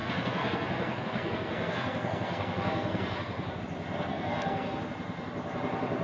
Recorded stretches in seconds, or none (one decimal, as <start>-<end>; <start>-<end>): 3.6-4.1; 4.8-6.0